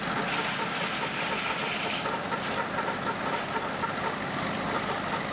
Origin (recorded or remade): recorded